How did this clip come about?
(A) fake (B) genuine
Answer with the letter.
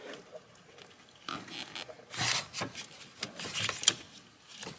B